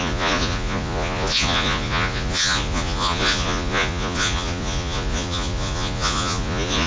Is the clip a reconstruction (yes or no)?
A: yes